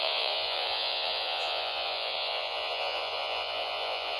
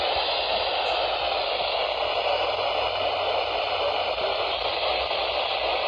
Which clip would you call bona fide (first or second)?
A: second